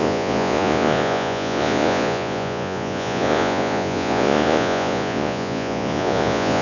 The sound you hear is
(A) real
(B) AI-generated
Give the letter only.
B